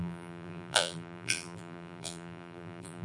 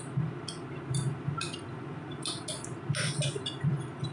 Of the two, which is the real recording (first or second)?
second